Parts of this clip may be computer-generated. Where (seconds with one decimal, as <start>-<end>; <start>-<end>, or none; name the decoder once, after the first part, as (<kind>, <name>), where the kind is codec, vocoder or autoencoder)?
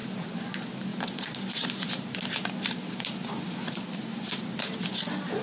none